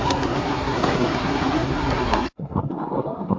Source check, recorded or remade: remade